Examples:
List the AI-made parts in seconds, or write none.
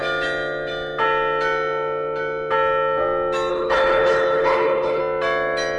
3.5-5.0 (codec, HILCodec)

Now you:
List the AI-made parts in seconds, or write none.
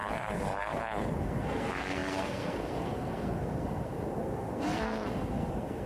0.0-5.9 (codec, SNAC)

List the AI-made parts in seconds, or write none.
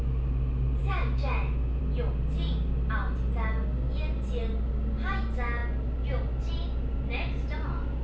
0.8-1.8 (autoencoder, DAC-VAE)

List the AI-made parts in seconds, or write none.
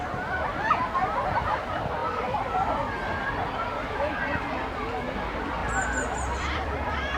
2.0-4.5 (vocoder, BigVGAN v2); 5.6-7.2